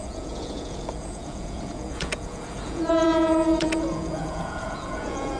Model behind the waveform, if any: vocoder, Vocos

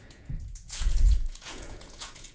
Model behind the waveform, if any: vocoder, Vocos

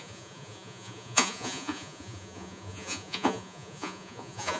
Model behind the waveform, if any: vocoder, Vocos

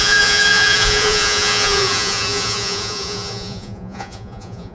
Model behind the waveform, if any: vocoder, Vocos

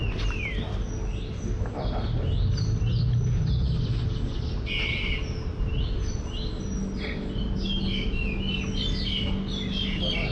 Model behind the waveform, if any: none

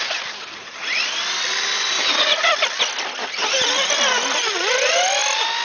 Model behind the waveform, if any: none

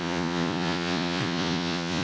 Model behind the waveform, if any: vocoder, Vocos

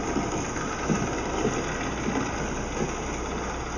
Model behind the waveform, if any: none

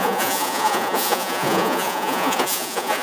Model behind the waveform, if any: vocoder, Vocos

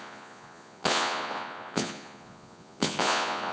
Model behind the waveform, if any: vocoder, Vocos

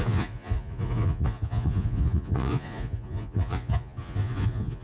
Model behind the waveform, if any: vocoder, Vocos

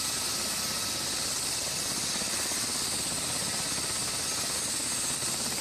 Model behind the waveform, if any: none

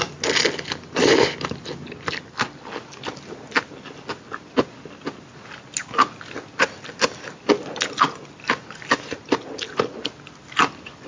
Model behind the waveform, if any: none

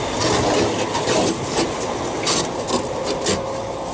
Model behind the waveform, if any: none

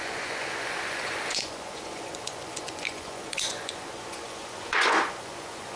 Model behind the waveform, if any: vocoder, Vocos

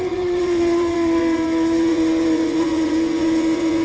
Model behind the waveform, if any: vocoder, Vocos